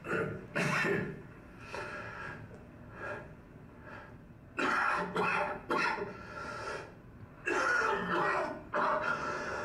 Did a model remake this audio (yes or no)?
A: no